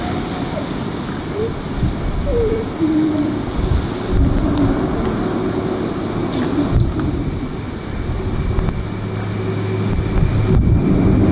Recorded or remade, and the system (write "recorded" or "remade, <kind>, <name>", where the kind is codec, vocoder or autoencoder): recorded